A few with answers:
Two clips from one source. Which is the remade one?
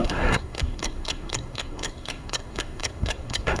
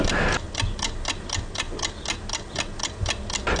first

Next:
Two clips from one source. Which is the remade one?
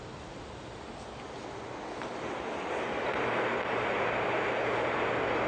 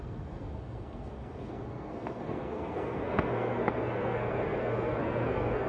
second